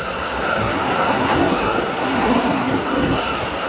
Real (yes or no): no